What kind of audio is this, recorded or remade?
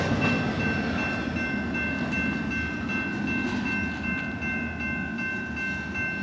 recorded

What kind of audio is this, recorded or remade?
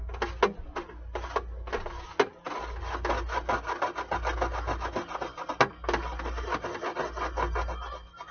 recorded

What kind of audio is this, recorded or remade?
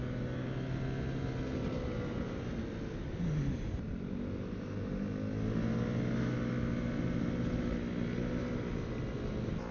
recorded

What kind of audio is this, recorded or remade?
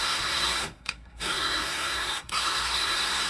remade